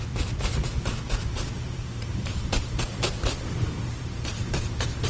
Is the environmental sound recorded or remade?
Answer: remade